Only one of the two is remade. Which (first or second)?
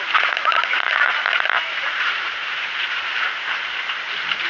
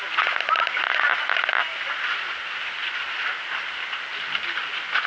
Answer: first